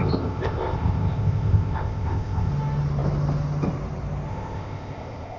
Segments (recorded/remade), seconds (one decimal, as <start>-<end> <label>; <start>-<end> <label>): 0.0-2.5 remade; 2.5-4.3 recorded; 4.3-5.4 remade